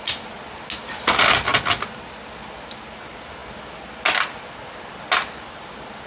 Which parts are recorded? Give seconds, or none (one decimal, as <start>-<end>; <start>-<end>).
0.0-6.1